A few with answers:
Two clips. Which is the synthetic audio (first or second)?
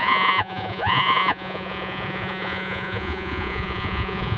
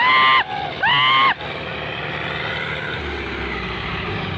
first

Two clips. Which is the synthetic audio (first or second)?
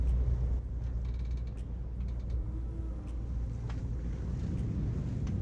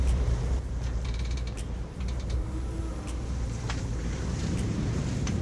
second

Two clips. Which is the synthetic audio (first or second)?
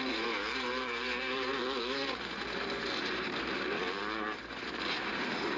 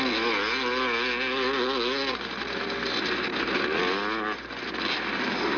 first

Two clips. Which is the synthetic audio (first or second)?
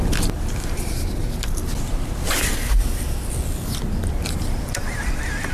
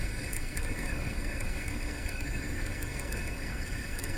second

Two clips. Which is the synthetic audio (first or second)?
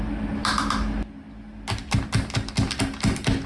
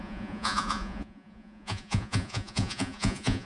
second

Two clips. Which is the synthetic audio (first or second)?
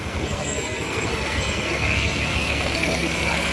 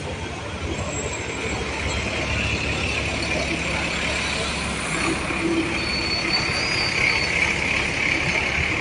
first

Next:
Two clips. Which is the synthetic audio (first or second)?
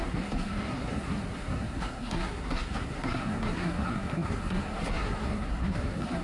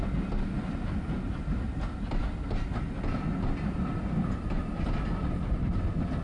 first